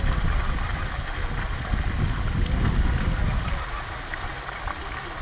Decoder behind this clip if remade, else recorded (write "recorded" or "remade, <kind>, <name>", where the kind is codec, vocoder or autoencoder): recorded